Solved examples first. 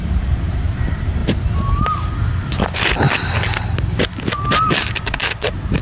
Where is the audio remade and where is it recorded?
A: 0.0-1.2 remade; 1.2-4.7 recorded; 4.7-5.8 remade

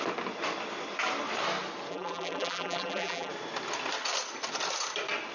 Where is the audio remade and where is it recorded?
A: 0.0-1.9 recorded; 1.9-3.3 remade; 3.3-5.3 recorded

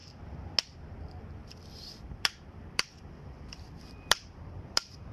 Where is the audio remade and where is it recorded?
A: 0.0-1.4 recorded; 1.4-5.1 remade

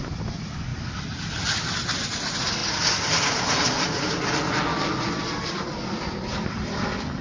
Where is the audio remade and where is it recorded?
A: 0.0-2.6 remade; 2.6-5.2 recorded; 5.2-7.2 remade

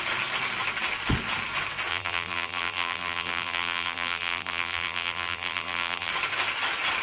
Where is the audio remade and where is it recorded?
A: 0.0-1.9 recorded; 1.9-6.1 remade; 6.1-7.0 recorded

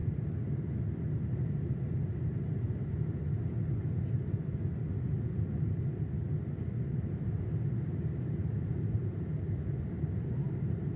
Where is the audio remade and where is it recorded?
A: 0.0-8.4 recorded; 8.4-9.8 remade; 9.8-11.0 recorded